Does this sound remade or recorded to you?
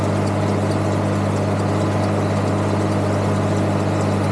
recorded